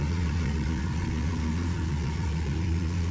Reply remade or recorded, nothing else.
remade